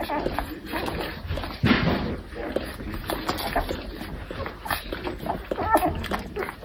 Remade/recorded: recorded